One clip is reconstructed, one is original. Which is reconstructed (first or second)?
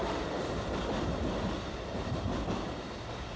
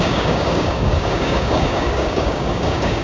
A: second